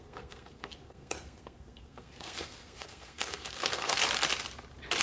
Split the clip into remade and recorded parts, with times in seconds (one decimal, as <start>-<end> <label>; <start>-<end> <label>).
0.0-4.0 remade; 4.0-5.0 recorded